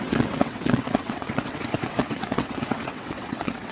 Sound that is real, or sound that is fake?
fake